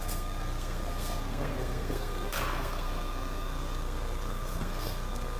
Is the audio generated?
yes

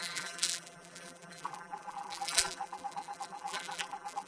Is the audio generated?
yes